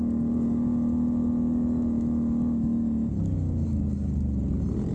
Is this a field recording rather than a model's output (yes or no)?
yes